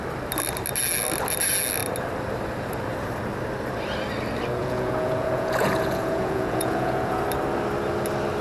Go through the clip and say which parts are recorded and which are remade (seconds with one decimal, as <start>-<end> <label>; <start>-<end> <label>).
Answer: 0.0-4.6 recorded; 4.6-7.2 remade; 7.2-8.4 recorded